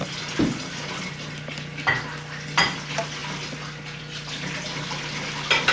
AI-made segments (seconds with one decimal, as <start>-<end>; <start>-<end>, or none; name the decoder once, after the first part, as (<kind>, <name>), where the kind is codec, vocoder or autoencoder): none